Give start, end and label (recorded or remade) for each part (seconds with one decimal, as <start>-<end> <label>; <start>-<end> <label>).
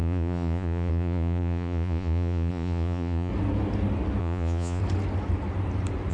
0.0-3.3 remade; 3.3-4.2 recorded; 4.2-4.8 remade; 4.8-6.1 recorded